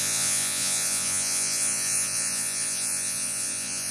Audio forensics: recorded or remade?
remade